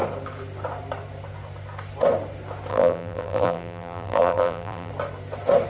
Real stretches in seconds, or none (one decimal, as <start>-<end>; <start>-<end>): 0.0-2.7; 4.9-5.7